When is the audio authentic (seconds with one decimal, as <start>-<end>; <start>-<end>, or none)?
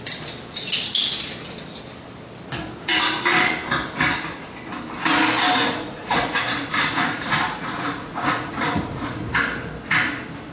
0.0-5.6; 9.3-10.5